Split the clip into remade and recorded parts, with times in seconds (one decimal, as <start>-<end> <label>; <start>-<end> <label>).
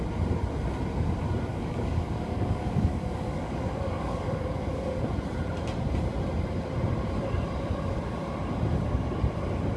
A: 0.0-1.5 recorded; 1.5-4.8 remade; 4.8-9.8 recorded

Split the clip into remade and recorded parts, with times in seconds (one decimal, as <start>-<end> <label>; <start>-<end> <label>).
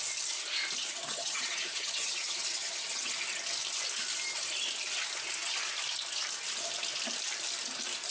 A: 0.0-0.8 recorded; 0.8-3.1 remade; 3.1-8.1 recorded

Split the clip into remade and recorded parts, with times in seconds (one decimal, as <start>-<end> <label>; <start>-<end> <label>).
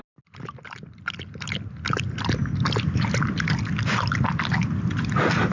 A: 0.0-5.5 recorded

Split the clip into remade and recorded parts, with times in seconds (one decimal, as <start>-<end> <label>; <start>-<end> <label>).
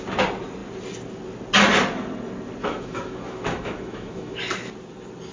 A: 0.0-2.6 recorded; 2.6-4.4 remade; 4.4-5.3 recorded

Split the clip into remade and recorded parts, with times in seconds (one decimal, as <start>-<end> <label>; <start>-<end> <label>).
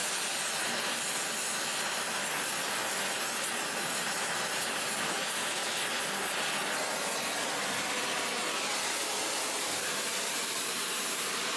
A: 0.0-4.0 recorded; 4.0-5.6 remade; 5.6-9.6 recorded; 9.6-11.6 remade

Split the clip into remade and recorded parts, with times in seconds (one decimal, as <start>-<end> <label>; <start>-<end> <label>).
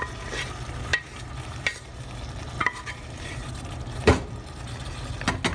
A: 0.0-0.9 recorded; 0.9-2.1 remade; 2.1-2.6 recorded; 2.6-4.1 remade; 4.1-5.5 recorded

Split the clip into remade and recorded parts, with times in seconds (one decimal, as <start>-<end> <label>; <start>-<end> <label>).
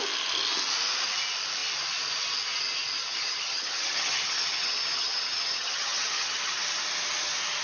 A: 0.0-3.0 recorded; 3.0-6.6 remade; 6.6-7.6 recorded